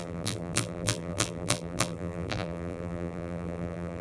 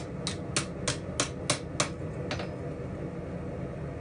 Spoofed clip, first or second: first